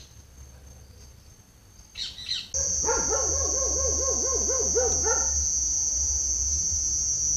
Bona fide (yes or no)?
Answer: yes